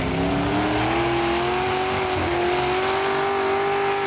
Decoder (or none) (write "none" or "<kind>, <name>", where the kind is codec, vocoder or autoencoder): none